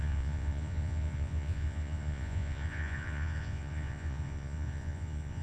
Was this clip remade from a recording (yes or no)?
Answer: yes